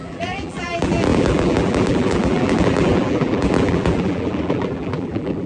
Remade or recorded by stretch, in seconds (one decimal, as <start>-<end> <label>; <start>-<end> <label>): 0.0-5.5 remade